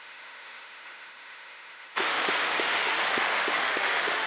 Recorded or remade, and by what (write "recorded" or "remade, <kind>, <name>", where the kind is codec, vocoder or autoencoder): remade, autoencoder, DAC-VAE